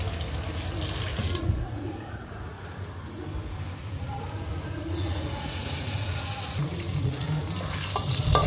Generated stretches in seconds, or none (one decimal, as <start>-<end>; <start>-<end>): 1.1-3.2; 3.8-7.4